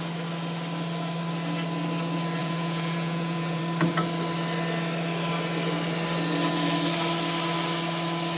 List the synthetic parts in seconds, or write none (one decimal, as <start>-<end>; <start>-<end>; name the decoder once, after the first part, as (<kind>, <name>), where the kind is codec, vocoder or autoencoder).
2.4-3.6 (vocoder, Vocos)